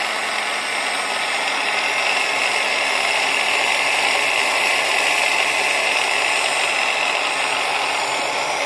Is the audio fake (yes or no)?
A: no